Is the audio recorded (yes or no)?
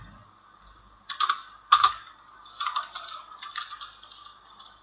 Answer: yes